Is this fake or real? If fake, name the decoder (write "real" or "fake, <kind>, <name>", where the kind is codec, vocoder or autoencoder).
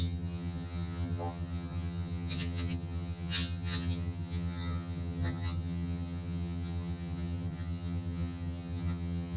fake, vocoder, HiFi-GAN